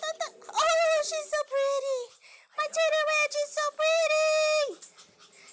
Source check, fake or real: real